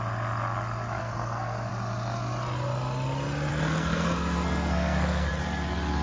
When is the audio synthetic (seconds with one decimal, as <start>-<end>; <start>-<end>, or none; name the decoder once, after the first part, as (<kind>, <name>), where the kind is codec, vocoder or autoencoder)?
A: 1.0-1.7 (codec, SNAC); 3.5-5.3